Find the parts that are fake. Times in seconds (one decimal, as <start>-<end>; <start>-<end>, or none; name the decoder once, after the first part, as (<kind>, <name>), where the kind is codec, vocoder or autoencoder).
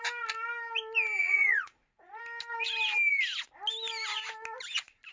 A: 1.2-2.2 (vocoder, Vocos)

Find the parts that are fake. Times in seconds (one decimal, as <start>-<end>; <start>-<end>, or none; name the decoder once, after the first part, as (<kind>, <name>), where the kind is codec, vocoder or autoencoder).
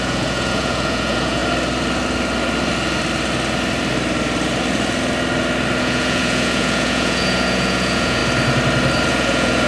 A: 0.0-1.4 (vocoder, Vocos); 5.8-8.2; 9.1-9.7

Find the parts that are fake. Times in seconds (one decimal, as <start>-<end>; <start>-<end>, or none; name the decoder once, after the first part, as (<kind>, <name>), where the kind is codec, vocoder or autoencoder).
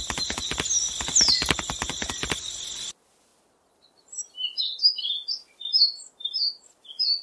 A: none